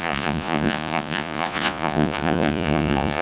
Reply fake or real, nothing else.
fake